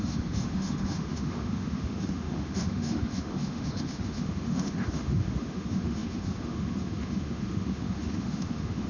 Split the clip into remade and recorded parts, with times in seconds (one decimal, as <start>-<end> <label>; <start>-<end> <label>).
0.0-8.9 remade